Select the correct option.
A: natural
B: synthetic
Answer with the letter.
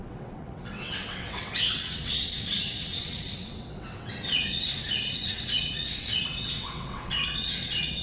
B